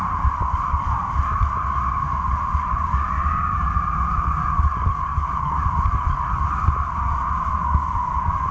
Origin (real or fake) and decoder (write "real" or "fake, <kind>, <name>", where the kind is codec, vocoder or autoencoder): real